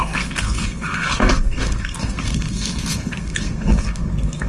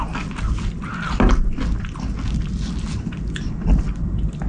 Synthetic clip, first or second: first